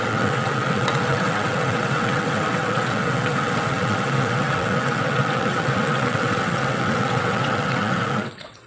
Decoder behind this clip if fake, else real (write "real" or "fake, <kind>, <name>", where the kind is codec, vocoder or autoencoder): fake, vocoder, WaveNeXt